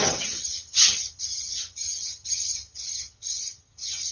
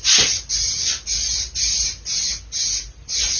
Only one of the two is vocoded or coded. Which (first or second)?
first